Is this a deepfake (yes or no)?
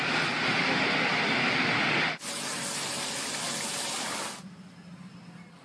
no